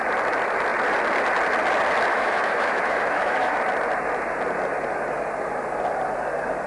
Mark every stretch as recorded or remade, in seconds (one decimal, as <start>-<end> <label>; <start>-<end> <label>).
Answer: 0.0-2.1 recorded; 2.1-3.6 remade; 3.6-6.7 recorded